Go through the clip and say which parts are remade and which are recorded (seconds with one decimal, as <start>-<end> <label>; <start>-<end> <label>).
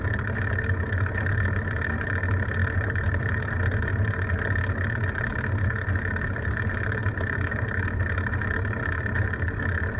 0.0-2.6 recorded; 2.6-3.6 remade; 3.6-10.0 recorded